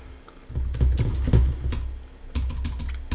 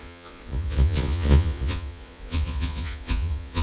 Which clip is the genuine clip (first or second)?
first